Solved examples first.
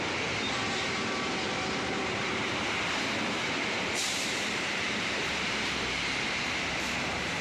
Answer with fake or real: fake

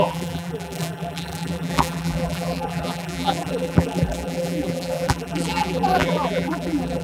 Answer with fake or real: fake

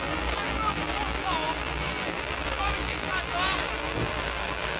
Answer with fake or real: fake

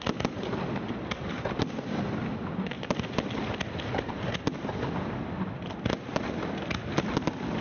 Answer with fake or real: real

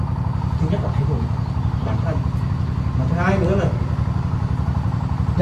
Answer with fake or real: real